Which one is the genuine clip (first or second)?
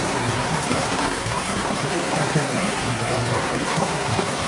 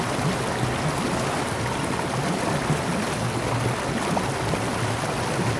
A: second